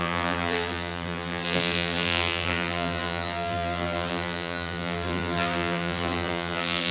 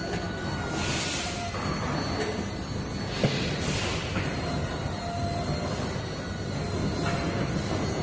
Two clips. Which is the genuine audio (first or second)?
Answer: second